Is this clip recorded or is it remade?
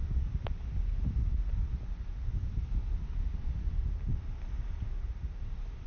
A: recorded